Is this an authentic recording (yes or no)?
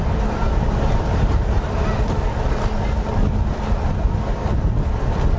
yes